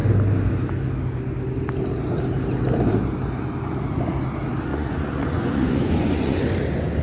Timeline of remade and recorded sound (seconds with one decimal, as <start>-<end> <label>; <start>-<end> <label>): 0.0-4.7 recorded; 4.7-6.5 remade; 6.5-7.0 recorded